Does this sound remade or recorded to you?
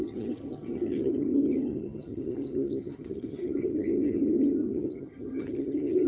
remade